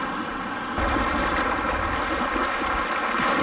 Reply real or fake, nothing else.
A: real